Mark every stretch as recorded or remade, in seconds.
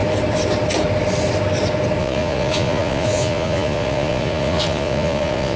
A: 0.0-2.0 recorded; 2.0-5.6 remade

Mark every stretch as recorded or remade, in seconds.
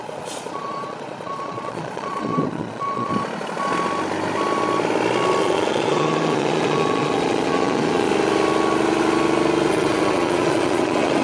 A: 0.0-3.1 remade; 3.1-5.4 recorded; 5.4-8.1 remade; 8.1-9.7 recorded; 9.7-11.2 remade